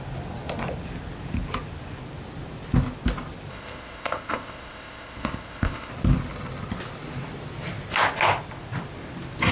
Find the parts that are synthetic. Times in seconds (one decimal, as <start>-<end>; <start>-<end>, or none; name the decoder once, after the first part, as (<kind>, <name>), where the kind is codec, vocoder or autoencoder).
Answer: 3.5-5.9 (codec, ZipCodec)

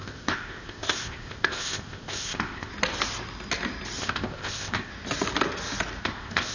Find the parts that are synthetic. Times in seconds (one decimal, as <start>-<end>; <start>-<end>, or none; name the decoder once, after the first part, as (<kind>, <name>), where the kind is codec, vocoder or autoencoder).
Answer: 0.0-2.7 (codec, ZipCodec); 4.0-4.9; 6.0-6.5

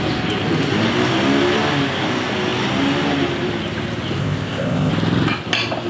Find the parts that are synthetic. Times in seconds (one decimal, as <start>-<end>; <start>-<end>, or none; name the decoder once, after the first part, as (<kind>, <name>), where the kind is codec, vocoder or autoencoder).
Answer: 4.2-4.9 (codec, ZipCodec)

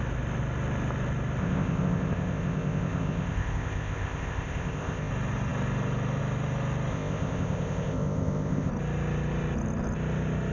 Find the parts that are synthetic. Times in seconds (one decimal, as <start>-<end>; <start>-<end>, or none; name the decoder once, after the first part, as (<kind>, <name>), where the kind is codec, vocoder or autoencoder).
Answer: 1.4-5.1 (codec, ZipCodec); 6.9-8.7

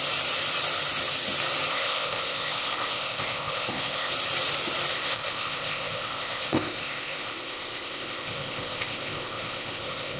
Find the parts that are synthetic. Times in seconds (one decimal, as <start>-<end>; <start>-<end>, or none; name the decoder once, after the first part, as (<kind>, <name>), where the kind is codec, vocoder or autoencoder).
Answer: 1.7-4.1 (codec, ZipCodec); 4.9-10.2

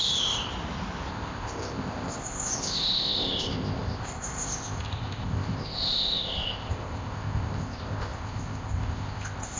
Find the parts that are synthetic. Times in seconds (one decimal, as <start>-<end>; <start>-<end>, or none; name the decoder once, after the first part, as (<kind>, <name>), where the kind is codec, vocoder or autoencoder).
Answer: 0.0-0.5 (codec, ZipCodec); 1.1-9.6

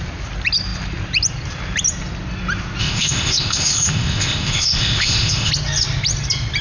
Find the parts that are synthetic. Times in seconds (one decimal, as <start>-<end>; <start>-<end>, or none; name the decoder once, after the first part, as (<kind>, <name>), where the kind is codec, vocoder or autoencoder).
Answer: 2.8-5.5 (codec, ZipCodec)